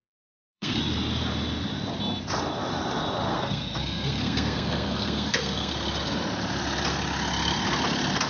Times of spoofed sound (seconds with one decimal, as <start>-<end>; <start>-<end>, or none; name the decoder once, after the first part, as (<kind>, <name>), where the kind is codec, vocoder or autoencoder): 0.0-0.8 (codec, SNAC); 3.3-5.7